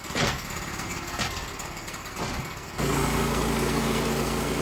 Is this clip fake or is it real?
fake